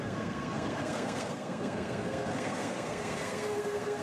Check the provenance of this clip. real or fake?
fake